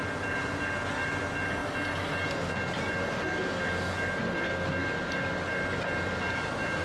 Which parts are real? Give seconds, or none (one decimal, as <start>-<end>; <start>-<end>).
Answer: 0.0-6.8